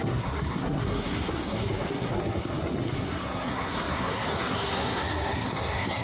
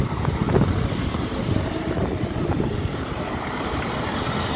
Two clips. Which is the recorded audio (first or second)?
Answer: second